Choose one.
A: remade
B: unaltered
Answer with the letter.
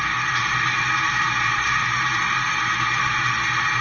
B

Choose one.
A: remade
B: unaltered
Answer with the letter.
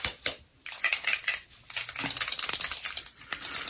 B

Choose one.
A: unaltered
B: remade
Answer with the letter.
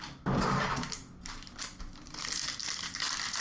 A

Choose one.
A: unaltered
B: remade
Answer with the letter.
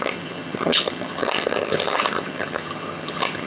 B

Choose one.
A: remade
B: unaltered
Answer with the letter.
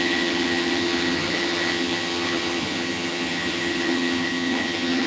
A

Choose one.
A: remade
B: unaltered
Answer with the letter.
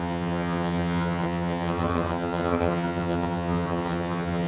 A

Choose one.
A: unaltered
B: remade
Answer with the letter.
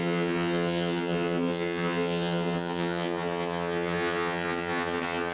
B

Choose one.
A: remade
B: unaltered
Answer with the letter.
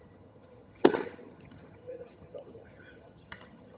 A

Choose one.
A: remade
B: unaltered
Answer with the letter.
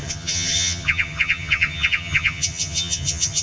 A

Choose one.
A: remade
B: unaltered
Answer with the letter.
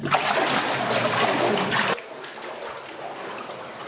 B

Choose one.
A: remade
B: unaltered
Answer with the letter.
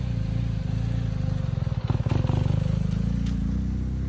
B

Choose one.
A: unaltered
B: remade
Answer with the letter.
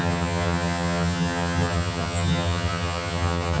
B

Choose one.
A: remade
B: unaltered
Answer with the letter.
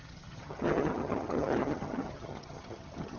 A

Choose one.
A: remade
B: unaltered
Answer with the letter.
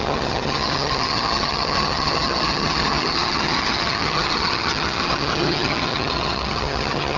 A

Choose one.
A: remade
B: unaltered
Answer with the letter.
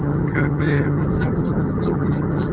A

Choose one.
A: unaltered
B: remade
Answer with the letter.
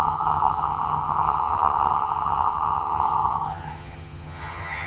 B